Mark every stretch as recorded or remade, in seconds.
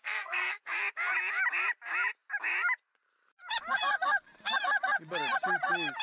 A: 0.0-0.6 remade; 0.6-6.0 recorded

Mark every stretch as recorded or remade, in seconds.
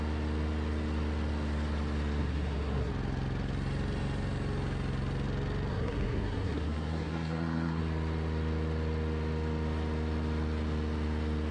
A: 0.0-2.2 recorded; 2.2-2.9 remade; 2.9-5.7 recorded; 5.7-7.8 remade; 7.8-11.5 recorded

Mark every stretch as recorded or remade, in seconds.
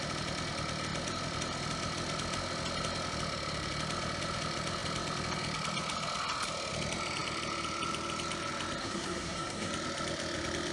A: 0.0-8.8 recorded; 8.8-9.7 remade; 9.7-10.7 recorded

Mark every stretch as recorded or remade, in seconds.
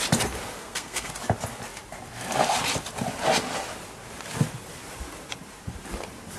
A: 0.0-0.6 recorded; 0.6-1.1 remade; 1.1-6.4 recorded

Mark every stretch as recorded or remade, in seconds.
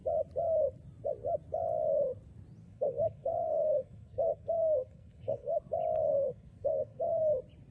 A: 0.0-2.6 recorded; 2.6-5.6 remade; 5.6-6.1 recorded; 6.1-7.2 remade; 7.2-7.7 recorded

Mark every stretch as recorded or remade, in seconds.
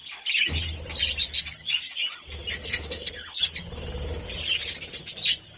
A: 0.0-2.6 recorded; 2.6-3.1 remade; 3.1-5.6 recorded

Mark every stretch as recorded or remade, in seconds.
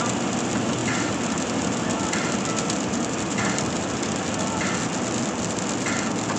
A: 0.0-6.4 recorded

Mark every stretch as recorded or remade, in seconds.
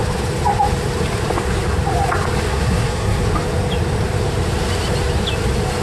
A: 0.0-2.5 recorded; 2.5-3.2 remade; 3.2-5.8 recorded